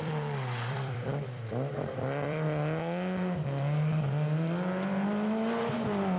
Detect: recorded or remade remade